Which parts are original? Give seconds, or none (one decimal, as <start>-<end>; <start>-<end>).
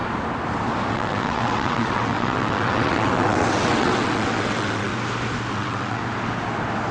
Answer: 0.0-0.9; 4.9-5.5; 6.0-6.9